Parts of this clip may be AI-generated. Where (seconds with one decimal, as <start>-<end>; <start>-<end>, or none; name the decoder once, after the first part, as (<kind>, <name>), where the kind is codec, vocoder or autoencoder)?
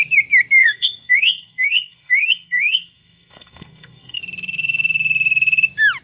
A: 0.6-4.2 (codec, SNAC)